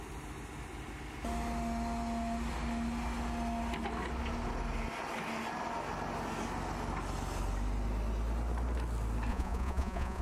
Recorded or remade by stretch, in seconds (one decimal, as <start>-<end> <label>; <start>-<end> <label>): 0.0-9.3 recorded; 9.3-10.2 remade